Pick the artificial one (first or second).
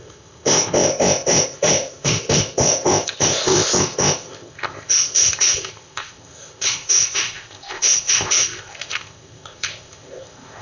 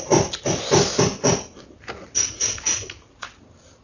first